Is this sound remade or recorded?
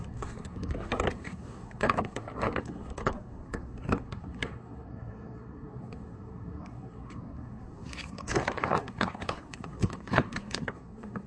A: remade